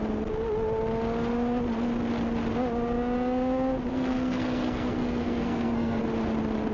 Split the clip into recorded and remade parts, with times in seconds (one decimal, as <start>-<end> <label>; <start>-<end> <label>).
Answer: 0.0-3.9 recorded; 3.9-6.0 remade; 6.0-6.7 recorded